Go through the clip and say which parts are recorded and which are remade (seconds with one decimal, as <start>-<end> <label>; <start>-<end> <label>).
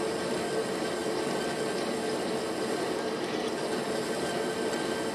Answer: 0.0-5.1 recorded